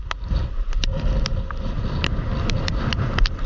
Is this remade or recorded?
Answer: recorded